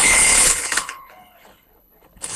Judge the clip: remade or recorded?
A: remade